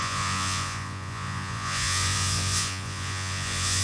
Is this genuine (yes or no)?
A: no